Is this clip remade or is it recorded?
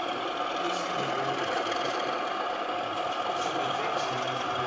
recorded